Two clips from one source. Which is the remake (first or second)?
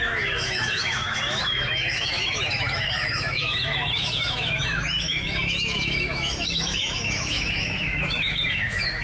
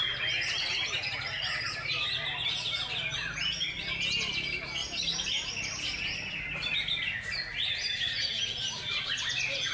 first